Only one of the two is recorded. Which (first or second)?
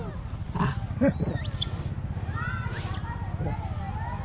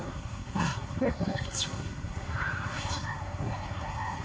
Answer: first